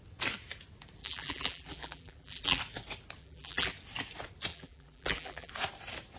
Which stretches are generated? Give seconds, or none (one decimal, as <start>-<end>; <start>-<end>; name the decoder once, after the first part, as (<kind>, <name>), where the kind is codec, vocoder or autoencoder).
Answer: 1.0-2.6 (vocoder, BigVGAN v2); 3.2-3.7; 4.5-5.5